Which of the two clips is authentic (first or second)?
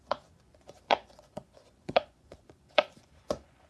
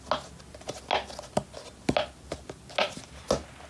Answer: second